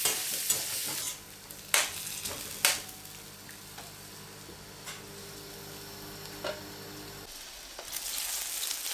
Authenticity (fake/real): real